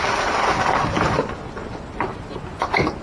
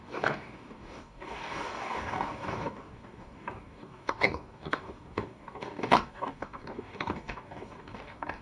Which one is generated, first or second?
second